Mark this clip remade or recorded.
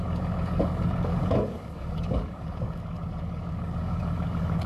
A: remade